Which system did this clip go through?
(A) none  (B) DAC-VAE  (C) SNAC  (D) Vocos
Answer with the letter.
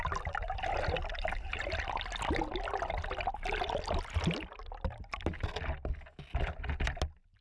A